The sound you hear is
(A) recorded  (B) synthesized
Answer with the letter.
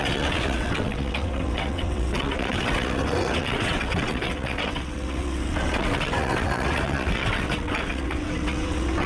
B